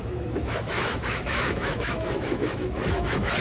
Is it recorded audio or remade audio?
remade